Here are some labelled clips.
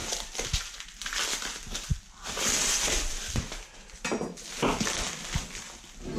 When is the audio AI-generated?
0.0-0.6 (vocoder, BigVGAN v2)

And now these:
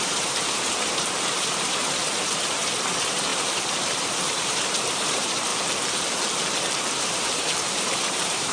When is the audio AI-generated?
0.0-5.5 (vocoder, BigVGAN v2); 6.6-8.5

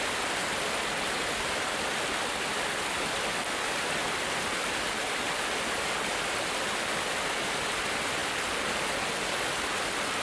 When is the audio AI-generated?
0.0-0.4 (vocoder, BigVGAN v2); 1.3-4.0; 5.6-8.2

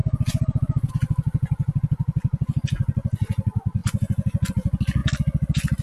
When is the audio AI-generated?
none

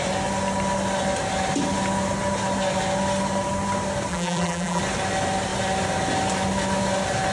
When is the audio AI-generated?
4.1-4.8 (vocoder, BigVGAN v2)

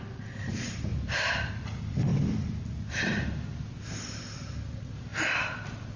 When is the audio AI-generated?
0.9-1.5 (vocoder, BigVGAN v2); 2.1-2.7; 5.1-6.0

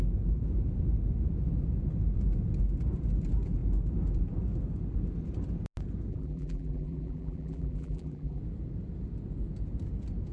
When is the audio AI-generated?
6.1-8.4 (vocoder, BigVGAN v2)